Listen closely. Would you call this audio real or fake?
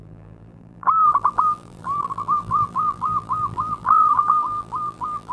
fake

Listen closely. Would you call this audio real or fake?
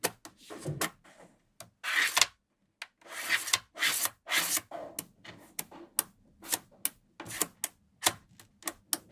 real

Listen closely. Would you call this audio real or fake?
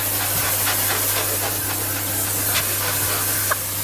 real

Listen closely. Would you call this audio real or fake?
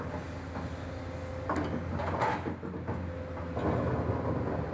real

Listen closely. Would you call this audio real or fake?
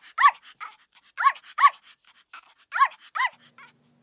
real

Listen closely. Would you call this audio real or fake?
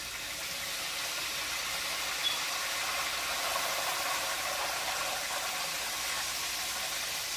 real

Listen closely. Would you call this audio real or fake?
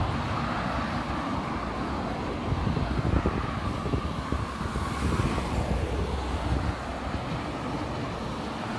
real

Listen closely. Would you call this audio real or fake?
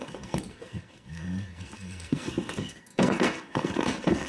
fake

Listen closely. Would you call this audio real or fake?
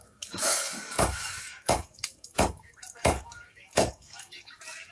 fake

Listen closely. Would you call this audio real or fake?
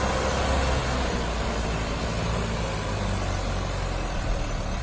real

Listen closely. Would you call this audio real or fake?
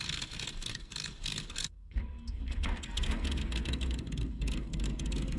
fake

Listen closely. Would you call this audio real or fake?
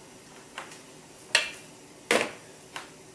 real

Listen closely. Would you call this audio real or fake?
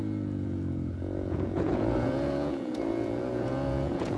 fake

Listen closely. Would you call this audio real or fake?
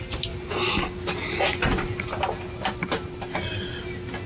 real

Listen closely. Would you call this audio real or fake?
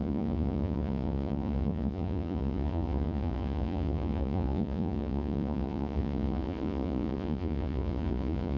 fake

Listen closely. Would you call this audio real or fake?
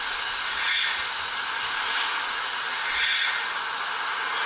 real